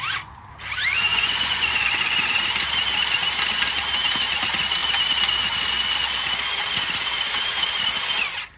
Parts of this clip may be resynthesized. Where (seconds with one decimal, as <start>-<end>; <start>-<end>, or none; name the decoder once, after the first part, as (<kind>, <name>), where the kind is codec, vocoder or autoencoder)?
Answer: 1.1-2.3 (vocoder, Vocos)